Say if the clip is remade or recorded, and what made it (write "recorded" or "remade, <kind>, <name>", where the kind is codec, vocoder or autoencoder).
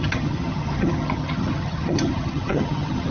remade, vocoder, HiFi-GAN